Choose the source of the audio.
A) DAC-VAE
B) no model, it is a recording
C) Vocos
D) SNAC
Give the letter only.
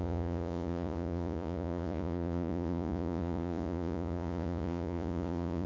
C